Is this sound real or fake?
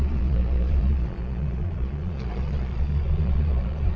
fake